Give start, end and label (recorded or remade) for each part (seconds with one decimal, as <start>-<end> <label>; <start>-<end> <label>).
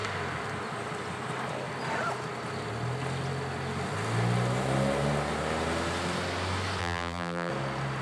0.0-6.8 recorded; 6.8-7.5 remade; 7.5-8.0 recorded